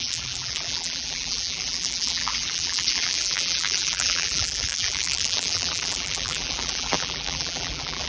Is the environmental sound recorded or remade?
remade